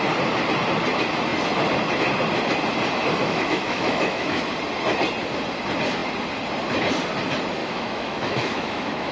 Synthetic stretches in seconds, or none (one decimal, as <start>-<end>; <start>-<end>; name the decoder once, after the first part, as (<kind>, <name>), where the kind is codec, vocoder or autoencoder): 3.2-4.5 (autoencoder, DAC-VAE); 7.6-9.1